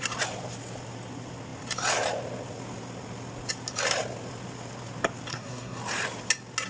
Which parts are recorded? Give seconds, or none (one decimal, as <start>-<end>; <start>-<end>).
0.0-5.3; 5.8-6.7